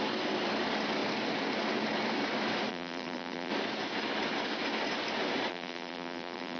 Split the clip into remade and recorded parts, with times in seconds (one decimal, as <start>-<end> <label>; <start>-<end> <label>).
0.0-2.7 recorded; 2.7-3.5 remade; 3.5-5.5 recorded; 5.5-6.6 remade